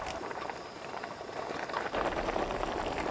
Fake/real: fake